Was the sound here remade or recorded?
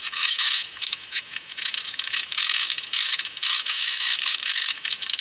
remade